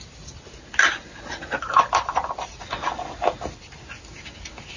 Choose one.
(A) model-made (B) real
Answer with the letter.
B